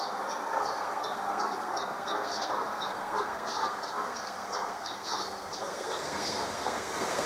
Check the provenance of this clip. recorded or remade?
remade